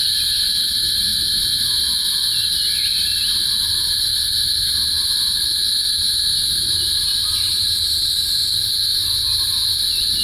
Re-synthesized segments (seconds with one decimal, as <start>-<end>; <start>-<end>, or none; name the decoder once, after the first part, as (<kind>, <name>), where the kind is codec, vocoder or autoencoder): 6.0-7.8 (vocoder, BigVGAN v2)